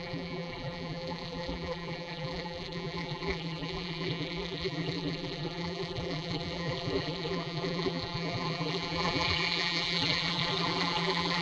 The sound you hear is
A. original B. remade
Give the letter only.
B